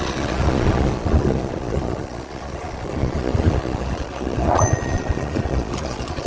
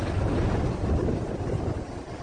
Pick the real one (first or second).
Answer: second